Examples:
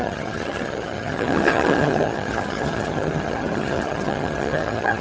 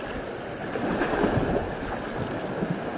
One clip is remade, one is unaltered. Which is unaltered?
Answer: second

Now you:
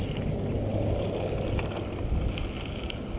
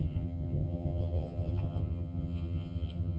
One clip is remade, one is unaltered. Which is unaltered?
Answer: first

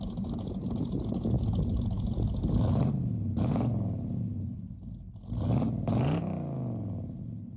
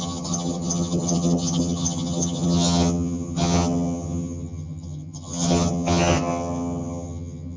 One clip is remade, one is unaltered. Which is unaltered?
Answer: first